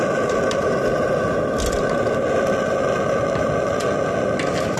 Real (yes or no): yes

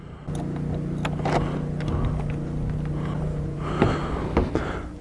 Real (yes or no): yes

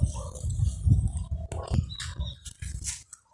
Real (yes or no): yes